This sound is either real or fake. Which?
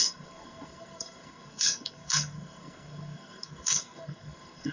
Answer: fake